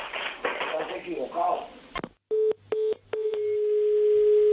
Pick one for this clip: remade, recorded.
recorded